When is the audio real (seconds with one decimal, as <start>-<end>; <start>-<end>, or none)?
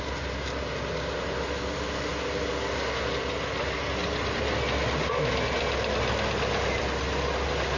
0.0-7.8